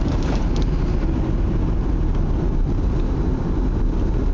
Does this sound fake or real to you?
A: real